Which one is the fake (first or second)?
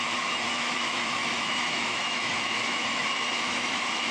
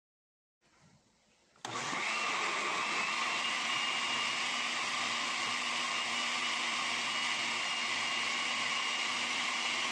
first